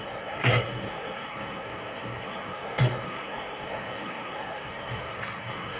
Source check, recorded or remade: remade